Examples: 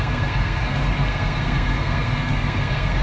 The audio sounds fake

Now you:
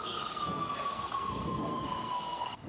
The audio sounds fake